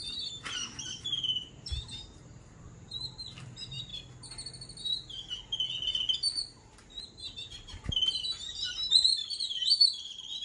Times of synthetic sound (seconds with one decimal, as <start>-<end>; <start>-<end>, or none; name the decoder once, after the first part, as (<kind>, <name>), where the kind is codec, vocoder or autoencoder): 0.0-3.9 (vocoder, BigVGAN v2); 7.0-10.4